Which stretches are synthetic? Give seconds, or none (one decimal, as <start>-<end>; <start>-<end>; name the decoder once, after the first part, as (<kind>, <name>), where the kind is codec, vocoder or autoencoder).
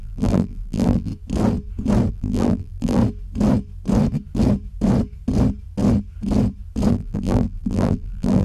0.0-1.1 (vocoder, BigVGAN v2); 2.1-3.0; 6.9-8.4